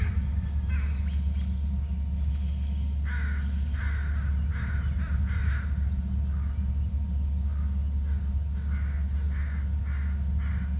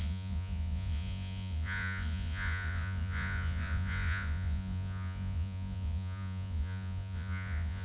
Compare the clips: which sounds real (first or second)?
first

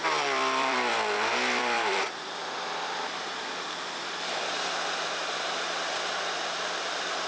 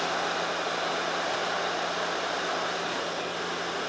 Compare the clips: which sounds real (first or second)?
second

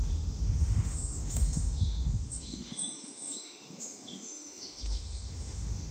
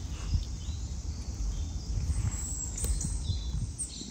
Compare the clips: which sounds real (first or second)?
second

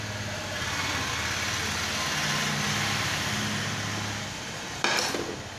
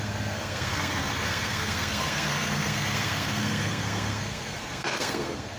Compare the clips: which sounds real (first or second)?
first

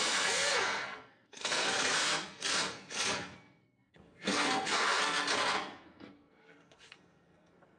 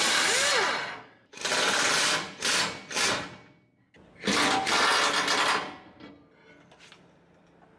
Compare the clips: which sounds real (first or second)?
second